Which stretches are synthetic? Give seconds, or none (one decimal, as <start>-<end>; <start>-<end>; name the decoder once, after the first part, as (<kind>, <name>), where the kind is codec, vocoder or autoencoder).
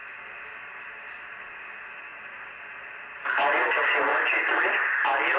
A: 4.1-5.0 (vocoder, BigVGAN v2)